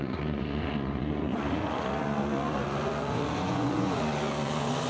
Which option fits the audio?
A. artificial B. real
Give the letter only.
A